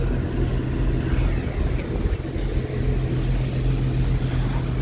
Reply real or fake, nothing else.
real